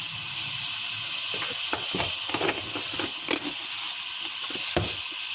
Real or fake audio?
real